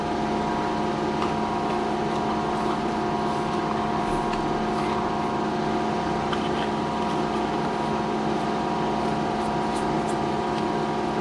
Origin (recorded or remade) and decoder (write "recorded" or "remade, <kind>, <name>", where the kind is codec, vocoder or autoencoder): recorded